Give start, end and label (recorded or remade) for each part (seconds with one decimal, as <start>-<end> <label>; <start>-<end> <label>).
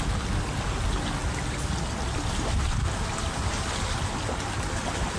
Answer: 0.0-5.2 recorded